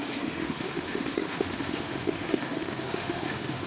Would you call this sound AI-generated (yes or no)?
yes